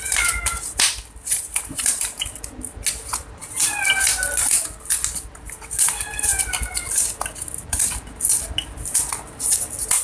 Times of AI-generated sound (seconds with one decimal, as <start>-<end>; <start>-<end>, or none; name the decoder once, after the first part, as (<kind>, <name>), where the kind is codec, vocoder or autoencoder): 3.4-6.8 (vocoder, BigVGAN v2)